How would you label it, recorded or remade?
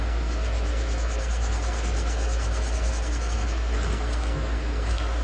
remade